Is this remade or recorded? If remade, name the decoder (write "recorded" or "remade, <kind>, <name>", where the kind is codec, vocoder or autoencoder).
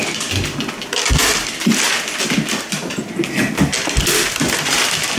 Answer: recorded